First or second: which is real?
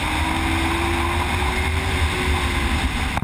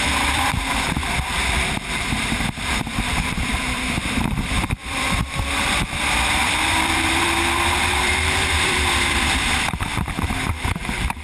first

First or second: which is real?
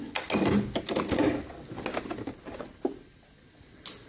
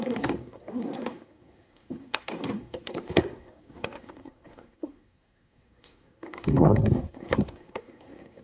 first